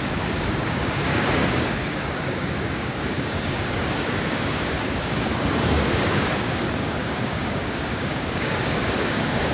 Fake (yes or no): yes